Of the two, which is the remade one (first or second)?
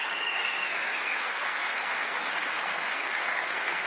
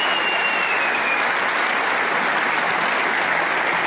first